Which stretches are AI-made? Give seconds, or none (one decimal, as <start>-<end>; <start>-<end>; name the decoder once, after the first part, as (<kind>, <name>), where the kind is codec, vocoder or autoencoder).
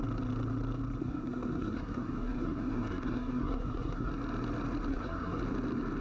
1.0-4.1 (codec, SNAC); 4.9-5.4